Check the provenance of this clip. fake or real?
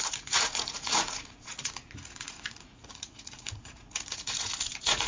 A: fake